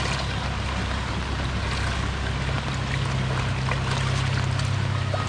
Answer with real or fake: real